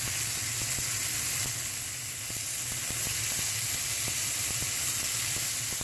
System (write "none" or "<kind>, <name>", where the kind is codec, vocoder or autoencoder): none